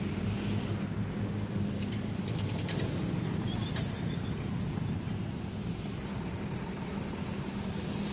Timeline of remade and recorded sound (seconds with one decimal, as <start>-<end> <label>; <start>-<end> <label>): 0.0-8.1 recorded